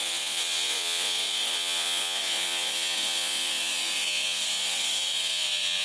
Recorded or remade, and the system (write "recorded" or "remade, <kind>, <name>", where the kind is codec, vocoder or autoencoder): remade, vocoder, Vocos